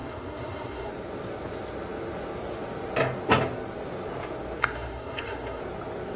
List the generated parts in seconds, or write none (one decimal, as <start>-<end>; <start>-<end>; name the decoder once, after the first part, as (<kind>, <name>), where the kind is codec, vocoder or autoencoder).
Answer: 0.0-0.9 (codec, SNAC); 4.6-5.6